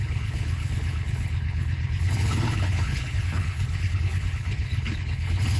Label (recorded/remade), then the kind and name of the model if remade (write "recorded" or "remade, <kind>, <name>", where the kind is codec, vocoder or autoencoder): remade, codec, HILCodec